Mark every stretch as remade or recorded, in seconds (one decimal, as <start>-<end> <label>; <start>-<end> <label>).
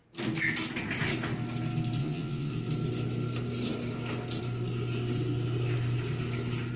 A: 0.0-2.0 recorded; 2.0-2.5 remade; 2.5-6.8 recorded